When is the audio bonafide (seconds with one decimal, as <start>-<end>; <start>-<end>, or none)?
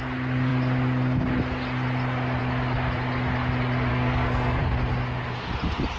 0.0-3.9; 4.6-6.0